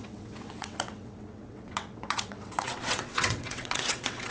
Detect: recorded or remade remade